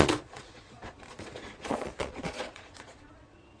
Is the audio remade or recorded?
remade